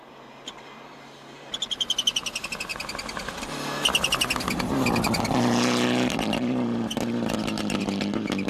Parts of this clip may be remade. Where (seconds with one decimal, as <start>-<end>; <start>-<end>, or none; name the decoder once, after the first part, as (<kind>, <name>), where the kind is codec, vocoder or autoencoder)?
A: none